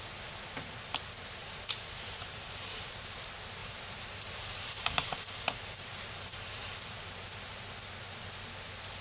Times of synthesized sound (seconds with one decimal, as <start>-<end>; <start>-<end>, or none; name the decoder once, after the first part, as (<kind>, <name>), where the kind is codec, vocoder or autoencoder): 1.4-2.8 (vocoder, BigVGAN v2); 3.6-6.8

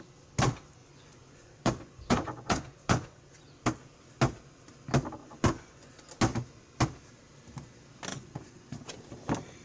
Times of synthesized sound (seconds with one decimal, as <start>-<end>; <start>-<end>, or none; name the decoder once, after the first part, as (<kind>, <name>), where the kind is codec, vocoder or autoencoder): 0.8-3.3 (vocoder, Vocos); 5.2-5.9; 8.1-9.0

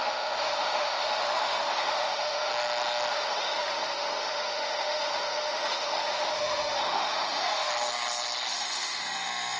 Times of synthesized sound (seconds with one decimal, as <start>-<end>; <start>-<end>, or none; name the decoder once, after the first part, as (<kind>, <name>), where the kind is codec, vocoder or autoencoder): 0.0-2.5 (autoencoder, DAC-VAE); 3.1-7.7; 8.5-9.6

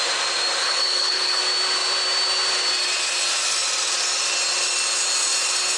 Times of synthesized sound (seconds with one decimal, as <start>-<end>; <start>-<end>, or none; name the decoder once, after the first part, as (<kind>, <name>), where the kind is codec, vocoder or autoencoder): 0.6-1.4 (codec, HILCodec)

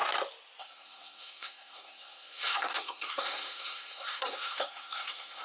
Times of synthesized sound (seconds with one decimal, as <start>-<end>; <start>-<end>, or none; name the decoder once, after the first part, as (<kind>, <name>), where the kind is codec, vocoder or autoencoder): 0.6-5.4 (codec, SNAC)

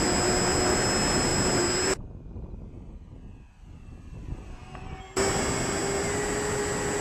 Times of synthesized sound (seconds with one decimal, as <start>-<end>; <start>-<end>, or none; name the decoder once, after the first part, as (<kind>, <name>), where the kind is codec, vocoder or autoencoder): none

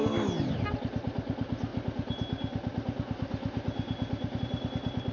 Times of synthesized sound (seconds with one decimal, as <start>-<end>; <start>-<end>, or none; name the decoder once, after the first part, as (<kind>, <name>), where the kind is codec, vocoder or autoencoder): none

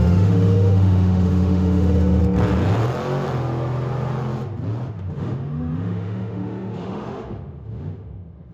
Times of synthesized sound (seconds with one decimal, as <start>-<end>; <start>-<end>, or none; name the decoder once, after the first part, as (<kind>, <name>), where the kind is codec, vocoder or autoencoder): 0.0-2.2 (autoencoder, DAC-VAE); 4.9-8.5